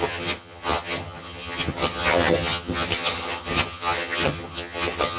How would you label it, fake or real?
fake